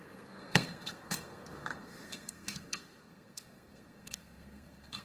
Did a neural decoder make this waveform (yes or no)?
yes